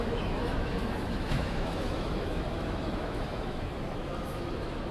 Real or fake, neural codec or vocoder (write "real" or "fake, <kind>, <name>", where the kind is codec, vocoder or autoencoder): fake, autoencoder, DAC-VAE